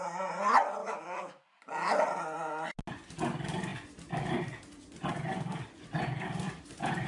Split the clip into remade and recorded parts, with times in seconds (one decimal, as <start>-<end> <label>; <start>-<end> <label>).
0.0-0.8 recorded; 0.8-1.4 remade; 1.4-7.1 recorded